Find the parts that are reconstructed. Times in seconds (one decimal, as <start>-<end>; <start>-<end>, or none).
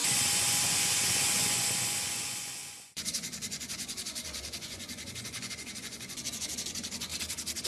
0.0-7.1